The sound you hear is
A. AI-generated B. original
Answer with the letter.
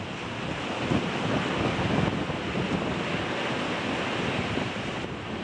B